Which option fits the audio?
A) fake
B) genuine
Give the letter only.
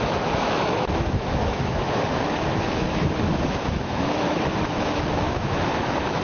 A